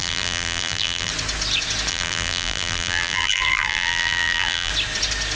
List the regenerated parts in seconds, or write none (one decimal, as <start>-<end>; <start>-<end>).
0.0-1.1; 1.9-4.7